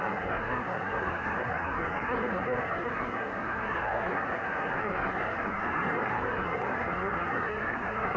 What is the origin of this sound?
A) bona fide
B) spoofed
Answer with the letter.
B